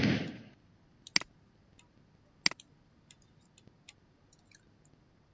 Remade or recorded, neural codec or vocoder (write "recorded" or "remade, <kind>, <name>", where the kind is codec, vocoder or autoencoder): recorded